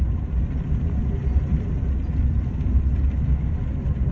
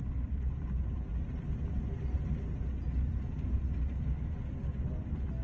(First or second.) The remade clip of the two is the first